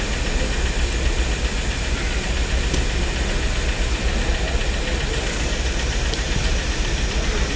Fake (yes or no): no